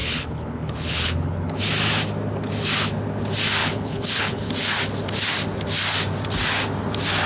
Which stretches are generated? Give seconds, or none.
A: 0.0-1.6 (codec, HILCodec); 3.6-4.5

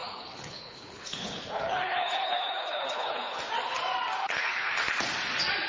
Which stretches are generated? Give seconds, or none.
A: 0.0-3.4 (codec, HILCodec); 4.2-4.7

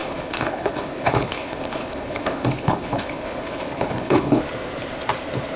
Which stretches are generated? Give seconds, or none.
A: 0.0-4.4 (codec, HILCodec)